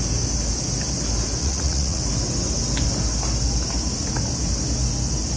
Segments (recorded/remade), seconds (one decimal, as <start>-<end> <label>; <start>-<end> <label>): 0.0-1.4 recorded; 1.4-2.0 remade; 2.0-5.4 recorded